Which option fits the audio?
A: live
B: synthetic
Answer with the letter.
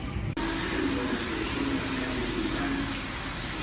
A